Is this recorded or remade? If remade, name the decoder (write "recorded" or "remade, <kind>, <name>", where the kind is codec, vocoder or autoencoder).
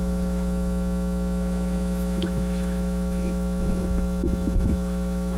remade, autoencoder, DAC-VAE